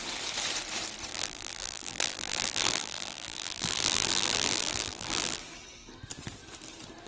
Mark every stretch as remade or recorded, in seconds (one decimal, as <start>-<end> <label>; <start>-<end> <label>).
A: 0.0-1.1 recorded; 1.1-5.4 remade; 5.4-7.1 recorded